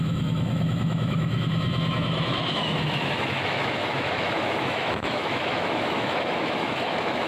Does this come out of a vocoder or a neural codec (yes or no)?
yes